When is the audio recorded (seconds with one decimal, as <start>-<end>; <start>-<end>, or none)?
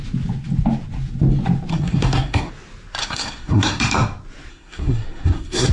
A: 0.0-1.7; 2.5-3.0; 3.8-4.5